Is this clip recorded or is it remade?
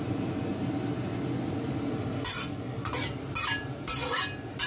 recorded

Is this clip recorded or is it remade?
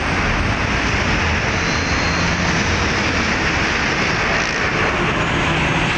recorded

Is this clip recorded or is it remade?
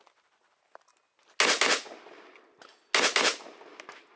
recorded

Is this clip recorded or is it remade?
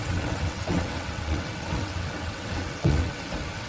remade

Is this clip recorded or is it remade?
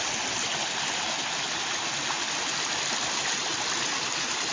recorded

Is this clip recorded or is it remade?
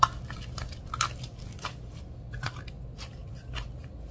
recorded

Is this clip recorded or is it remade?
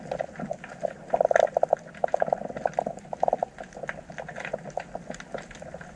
recorded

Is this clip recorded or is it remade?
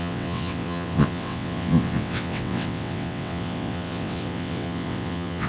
remade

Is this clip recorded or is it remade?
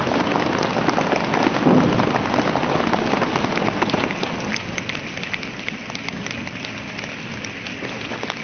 recorded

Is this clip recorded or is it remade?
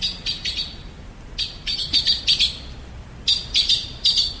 recorded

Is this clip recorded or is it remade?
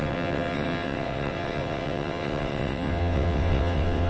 remade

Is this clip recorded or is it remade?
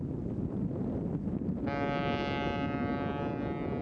recorded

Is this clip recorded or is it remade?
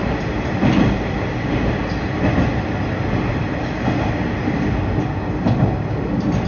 recorded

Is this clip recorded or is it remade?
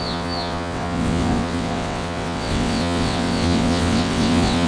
remade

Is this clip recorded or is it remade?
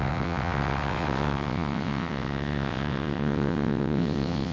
remade